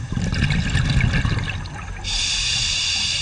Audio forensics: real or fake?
real